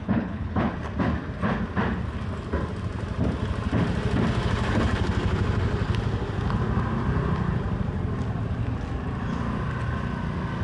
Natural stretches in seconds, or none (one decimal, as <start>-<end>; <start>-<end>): 0.7-10.6